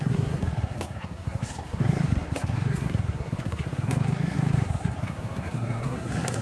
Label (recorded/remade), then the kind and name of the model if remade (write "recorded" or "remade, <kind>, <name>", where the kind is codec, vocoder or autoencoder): remade, codec, SNAC